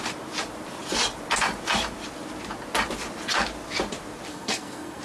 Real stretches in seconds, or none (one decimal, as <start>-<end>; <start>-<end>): 0.0-4.3